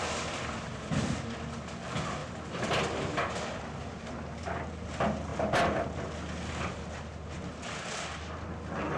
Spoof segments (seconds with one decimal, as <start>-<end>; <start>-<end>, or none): none